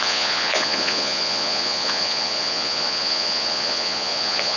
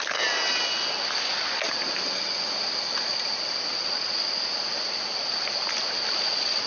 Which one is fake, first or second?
first